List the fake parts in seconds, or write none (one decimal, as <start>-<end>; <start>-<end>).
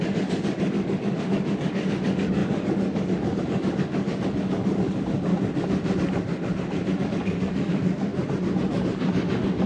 0.0-5.3; 7.0-8.1; 8.7-9.7